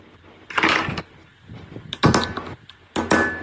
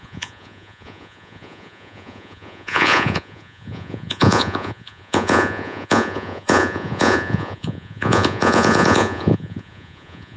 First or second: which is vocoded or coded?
second